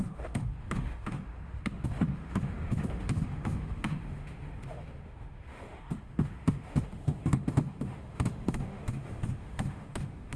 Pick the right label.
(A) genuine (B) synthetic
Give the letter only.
B